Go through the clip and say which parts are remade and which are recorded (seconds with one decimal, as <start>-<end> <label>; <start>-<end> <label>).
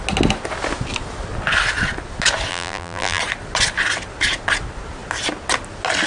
0.0-2.5 recorded; 2.5-3.2 remade; 3.2-6.1 recorded